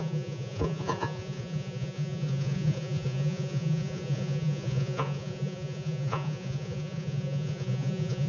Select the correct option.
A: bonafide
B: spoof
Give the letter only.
B